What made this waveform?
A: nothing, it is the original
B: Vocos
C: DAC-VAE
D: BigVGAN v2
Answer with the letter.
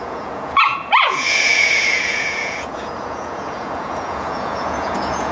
B